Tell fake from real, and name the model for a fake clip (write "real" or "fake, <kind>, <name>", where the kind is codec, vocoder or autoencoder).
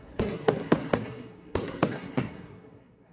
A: fake, codec, SNAC